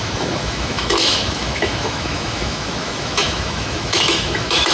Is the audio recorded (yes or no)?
no